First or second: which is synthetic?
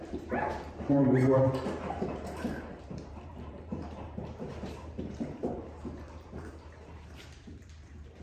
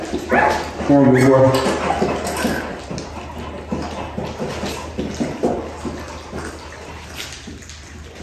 first